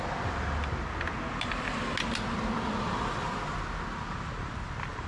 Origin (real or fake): real